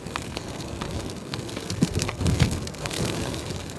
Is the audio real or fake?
fake